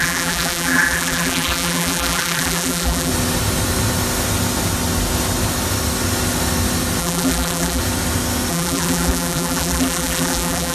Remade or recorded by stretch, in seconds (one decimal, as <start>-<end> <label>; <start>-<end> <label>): 0.0-3.1 remade; 3.1-7.0 recorded; 7.0-7.8 remade; 7.8-8.5 recorded; 8.5-10.7 remade